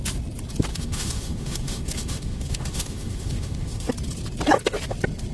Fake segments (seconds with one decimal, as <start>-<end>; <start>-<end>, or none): 0.7-3.9